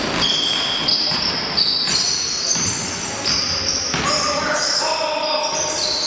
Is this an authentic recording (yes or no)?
yes